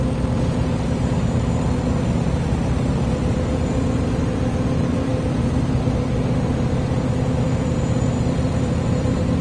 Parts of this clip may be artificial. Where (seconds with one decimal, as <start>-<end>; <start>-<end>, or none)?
none